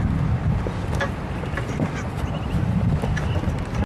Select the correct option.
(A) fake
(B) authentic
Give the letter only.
B